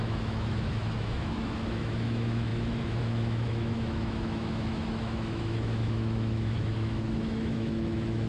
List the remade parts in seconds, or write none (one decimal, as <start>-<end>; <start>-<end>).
0.0-8.3